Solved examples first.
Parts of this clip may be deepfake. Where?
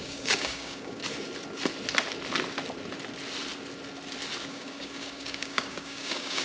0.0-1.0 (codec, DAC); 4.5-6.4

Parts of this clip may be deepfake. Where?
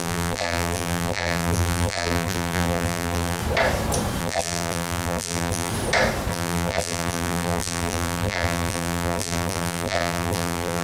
0.0-3.4 (vocoder, BigVGAN v2); 4.2-5.7; 6.3-10.8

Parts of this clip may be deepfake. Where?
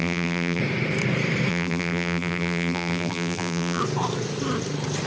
0.0-0.6 (vocoder, BigVGAN v2); 1.5-3.8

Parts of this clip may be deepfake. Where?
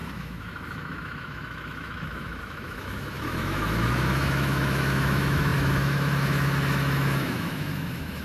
0.0-8.2 (autoencoder, DAC-VAE)